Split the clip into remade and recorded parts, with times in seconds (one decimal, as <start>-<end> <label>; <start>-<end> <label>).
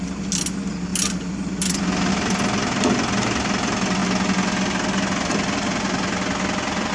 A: 0.0-6.9 recorded